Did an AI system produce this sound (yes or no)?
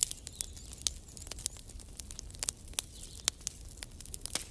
no